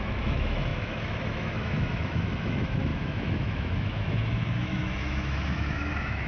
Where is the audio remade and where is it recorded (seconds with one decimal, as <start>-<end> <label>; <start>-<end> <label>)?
0.0-6.3 remade